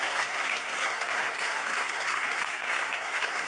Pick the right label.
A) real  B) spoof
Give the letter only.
B